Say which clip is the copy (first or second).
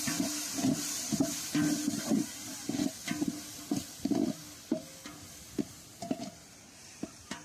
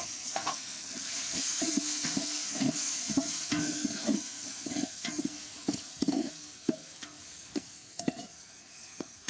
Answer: second